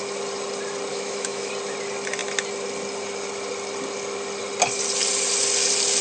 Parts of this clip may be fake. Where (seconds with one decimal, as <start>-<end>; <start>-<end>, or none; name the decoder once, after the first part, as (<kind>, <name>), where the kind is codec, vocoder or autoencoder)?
0.9-1.5 (autoencoder, DAC-VAE)